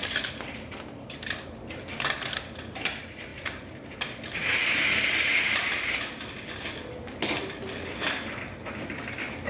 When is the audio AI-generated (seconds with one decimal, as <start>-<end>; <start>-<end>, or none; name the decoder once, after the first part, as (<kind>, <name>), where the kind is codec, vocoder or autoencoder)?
0.0-1.5 (vocoder, BigVGAN v2)